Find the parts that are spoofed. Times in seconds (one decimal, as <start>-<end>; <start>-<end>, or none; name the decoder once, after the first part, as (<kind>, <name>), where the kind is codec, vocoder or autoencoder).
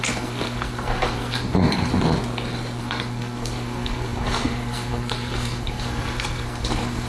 0.0-1.9 (codec, SNAC); 2.8-7.1